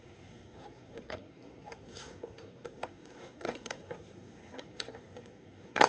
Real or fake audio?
fake